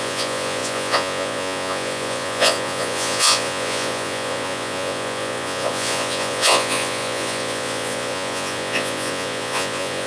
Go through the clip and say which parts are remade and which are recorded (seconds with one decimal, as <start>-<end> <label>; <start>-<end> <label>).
0.0-10.1 remade